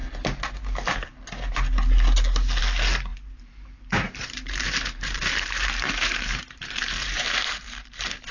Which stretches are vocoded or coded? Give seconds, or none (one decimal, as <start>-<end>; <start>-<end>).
3.1-8.3